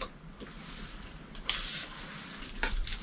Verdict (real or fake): real